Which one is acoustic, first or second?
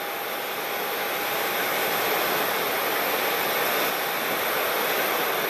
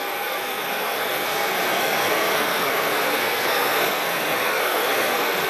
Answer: first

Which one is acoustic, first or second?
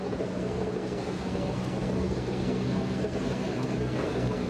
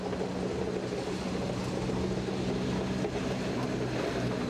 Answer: second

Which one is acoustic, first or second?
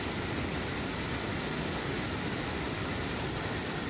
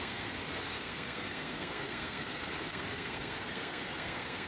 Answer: first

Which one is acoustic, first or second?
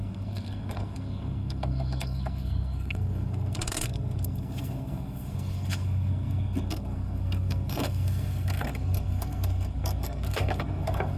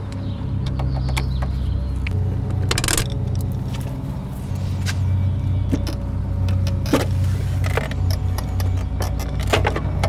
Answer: second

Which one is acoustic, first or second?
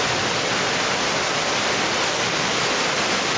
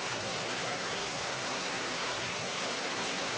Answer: first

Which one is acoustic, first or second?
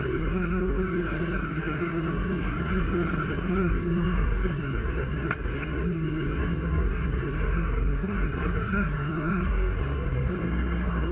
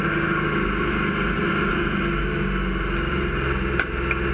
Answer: second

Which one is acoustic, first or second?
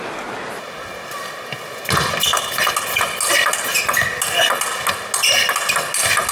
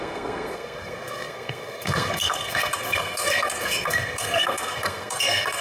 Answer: first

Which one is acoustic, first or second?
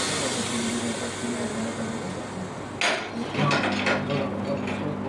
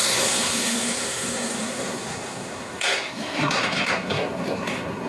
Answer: first